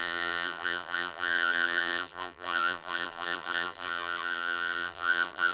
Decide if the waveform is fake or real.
fake